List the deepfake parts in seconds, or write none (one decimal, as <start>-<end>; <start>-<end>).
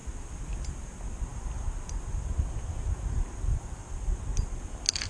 none